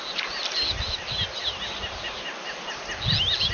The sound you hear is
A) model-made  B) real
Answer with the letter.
B